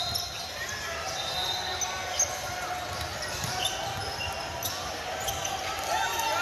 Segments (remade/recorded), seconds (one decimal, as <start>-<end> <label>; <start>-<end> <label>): 0.0-6.4 recorded